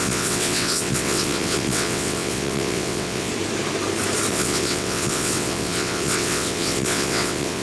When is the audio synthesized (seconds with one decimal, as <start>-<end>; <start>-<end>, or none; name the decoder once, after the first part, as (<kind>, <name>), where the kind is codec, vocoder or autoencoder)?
0.0-3.3 (vocoder, WaveNeXt); 4.3-7.6